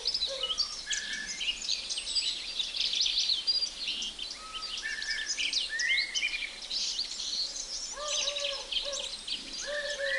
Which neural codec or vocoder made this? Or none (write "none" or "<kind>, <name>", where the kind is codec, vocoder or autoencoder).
none